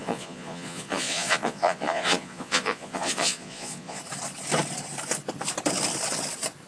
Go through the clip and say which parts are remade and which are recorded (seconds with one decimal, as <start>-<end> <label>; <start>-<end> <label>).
0.0-4.0 remade; 4.0-6.7 recorded